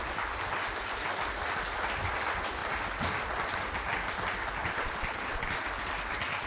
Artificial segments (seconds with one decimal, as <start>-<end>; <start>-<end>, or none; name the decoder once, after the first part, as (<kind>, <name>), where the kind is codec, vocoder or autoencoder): 4.6-5.5 (vocoder, BigVGAN v2)